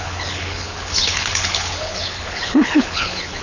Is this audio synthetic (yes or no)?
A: yes